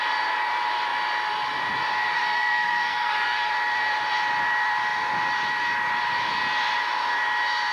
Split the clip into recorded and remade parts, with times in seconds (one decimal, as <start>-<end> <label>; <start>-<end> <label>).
0.0-2.1 recorded; 2.1-3.5 remade; 3.5-7.7 recorded